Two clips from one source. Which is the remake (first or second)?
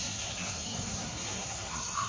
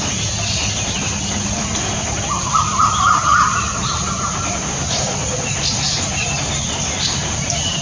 first